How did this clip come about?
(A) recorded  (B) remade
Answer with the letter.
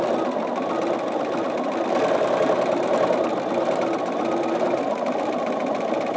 A